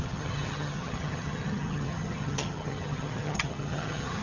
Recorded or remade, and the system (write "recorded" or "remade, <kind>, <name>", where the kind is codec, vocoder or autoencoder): remade, vocoder, HiFi-GAN